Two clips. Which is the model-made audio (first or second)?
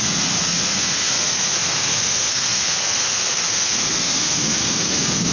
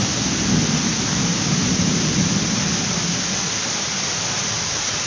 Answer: first